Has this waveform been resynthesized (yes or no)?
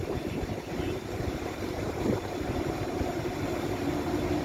yes